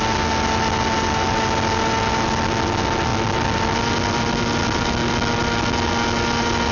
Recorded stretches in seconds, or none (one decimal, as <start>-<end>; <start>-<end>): 0.0-6.7